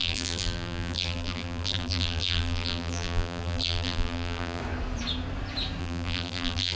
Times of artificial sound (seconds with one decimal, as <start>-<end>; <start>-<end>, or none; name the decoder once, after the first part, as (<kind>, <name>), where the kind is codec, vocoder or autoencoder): 0.0-4.6 (vocoder, BigVGAN v2); 5.8-6.7